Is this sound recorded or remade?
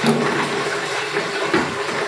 recorded